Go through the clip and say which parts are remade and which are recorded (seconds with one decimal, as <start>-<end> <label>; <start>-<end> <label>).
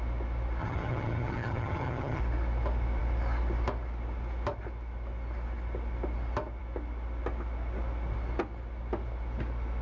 0.0-0.6 recorded; 0.6-2.2 remade; 2.2-9.8 recorded